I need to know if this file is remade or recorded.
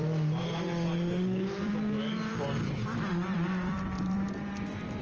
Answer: remade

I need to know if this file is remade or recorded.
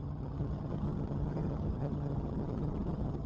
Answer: remade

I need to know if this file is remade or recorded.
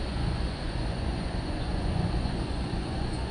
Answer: remade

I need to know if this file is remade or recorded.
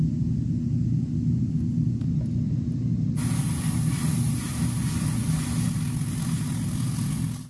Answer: recorded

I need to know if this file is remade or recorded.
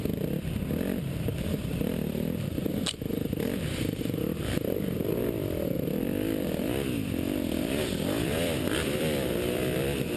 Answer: remade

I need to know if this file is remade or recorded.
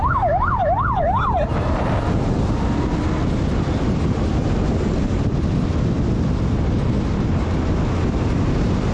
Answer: recorded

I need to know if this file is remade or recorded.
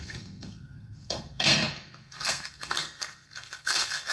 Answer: remade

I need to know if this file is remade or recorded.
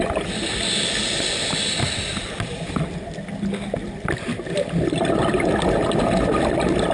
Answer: recorded